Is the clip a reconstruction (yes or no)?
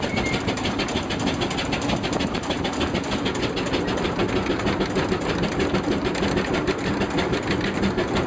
no